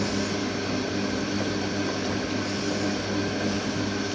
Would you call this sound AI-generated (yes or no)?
no